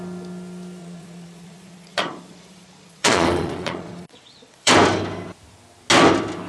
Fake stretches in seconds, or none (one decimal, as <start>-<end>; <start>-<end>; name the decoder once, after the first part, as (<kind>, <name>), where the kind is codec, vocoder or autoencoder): 0.8-4.7 (vocoder, Vocos)